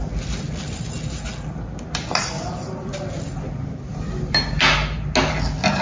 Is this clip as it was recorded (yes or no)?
yes